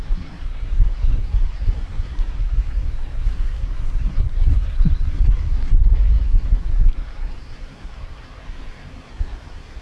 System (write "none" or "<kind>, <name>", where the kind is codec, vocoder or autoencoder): codec, SNAC